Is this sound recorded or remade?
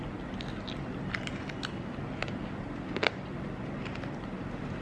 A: recorded